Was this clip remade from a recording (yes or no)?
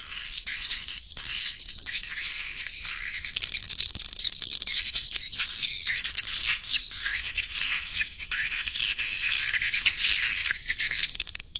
yes